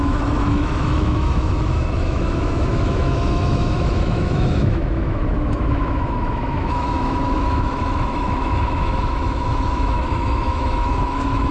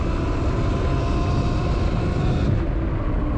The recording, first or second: second